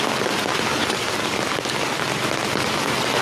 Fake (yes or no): no